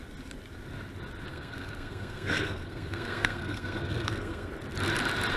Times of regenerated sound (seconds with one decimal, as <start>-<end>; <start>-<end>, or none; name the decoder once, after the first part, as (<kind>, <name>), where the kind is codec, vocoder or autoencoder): 1.3-4.5 (codec, SNAC)